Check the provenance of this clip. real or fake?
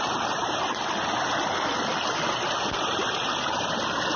fake